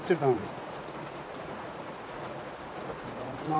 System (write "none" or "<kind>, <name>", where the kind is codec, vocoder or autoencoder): vocoder, Vocos